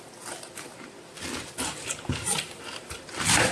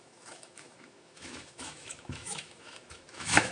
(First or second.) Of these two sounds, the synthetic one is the second